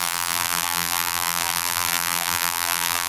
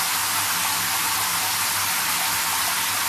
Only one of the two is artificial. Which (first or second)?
first